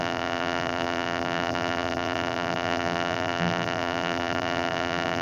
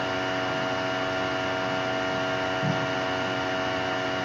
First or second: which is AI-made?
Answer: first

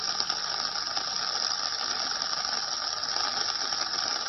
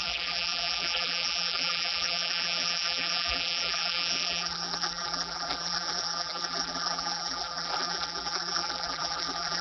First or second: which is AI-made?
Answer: second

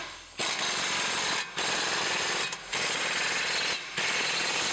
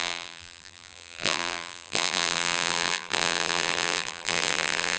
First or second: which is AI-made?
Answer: second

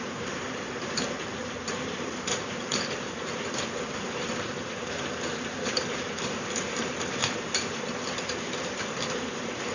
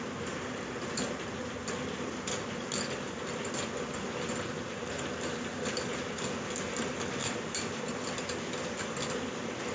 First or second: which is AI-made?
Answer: first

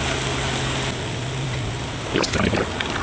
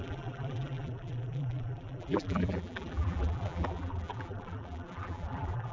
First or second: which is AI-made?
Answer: second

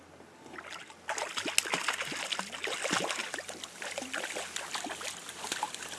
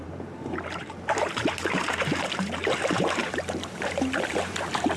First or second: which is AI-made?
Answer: second